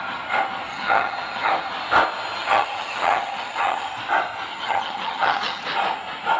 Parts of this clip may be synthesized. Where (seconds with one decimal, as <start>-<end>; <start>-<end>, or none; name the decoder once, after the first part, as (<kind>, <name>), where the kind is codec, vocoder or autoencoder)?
0.7-1.5 (vocoder, HiFi-GAN); 2.4-3.9; 4.5-5.6